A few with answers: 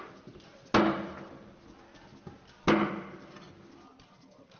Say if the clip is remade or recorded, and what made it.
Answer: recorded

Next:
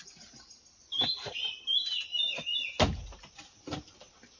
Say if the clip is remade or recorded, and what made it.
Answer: recorded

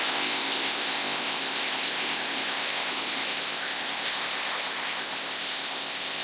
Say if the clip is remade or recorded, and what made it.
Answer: remade, codec, ZipCodec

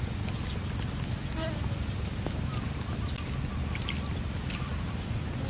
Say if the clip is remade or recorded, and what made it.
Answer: recorded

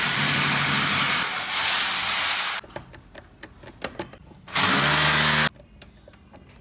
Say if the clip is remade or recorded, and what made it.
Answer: recorded